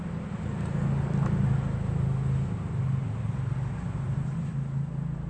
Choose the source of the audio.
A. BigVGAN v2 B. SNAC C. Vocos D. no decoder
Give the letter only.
D